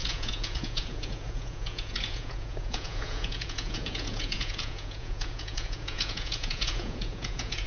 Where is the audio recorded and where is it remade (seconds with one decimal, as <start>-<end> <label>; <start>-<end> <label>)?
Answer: 0.0-7.7 remade